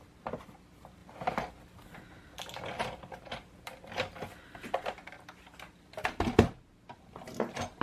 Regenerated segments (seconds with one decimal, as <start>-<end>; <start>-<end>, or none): none